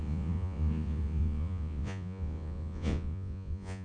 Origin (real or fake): fake